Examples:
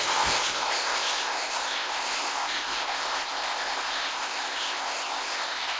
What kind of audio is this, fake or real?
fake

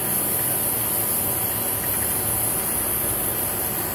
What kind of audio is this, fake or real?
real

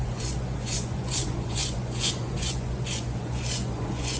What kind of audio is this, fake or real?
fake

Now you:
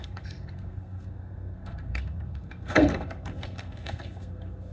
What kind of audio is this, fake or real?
fake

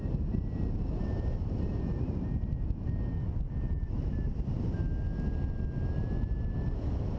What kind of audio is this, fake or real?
real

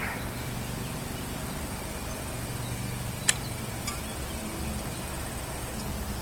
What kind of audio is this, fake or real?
real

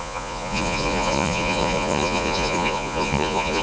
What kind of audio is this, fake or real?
fake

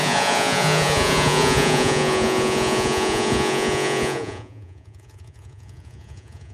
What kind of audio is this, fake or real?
fake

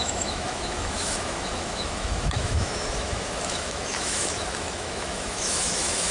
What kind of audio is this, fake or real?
fake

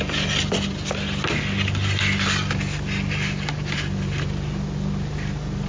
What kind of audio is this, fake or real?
real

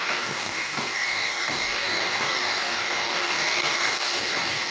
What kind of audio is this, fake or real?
fake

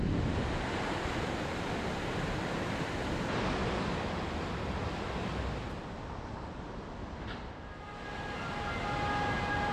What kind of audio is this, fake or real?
real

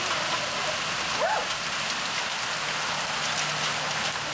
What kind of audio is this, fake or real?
real